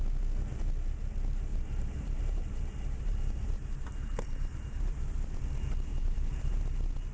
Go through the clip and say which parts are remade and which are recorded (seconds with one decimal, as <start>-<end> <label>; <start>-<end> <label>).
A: 0.0-1.5 recorded; 1.5-5.3 remade; 5.3-5.9 recorded; 5.9-6.6 remade; 6.6-7.1 recorded